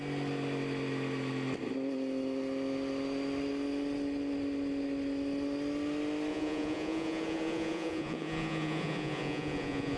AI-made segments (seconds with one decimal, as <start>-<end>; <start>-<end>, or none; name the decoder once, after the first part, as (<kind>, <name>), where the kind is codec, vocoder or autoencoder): 6.3-10.0 (vocoder, Vocos)